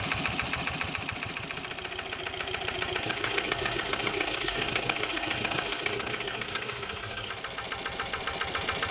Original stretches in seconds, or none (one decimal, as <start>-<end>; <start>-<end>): 0.0-3.0; 7.3-8.9

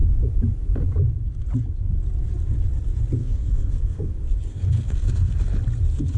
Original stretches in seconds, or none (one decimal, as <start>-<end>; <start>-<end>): 0.0-3.2; 4.1-4.5; 5.3-6.2

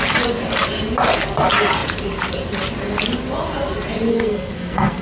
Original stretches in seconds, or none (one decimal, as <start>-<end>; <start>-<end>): 0.0-4.1

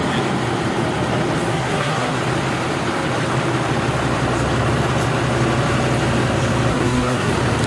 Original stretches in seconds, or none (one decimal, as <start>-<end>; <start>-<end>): 0.0-1.5; 2.2-6.7; 7.3-7.7

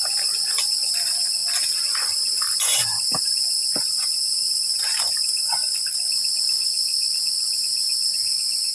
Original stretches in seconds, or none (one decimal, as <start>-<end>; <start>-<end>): 0.0-8.7